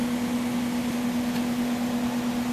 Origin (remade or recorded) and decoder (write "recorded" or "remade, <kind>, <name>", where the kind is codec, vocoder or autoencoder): recorded